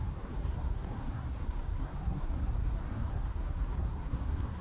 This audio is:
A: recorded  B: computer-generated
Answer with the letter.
B